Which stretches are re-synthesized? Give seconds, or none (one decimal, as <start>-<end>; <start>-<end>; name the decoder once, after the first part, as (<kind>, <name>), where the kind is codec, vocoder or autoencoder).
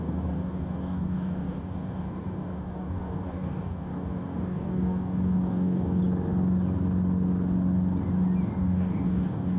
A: 0.0-6.0 (codec, DAC); 8.6-9.6